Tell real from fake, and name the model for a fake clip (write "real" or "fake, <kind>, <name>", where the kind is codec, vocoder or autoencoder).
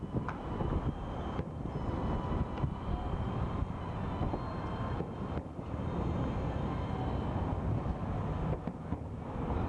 real